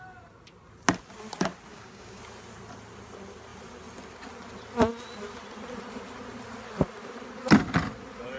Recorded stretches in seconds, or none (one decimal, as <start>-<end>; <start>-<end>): 0.0-1.7; 2.2-8.4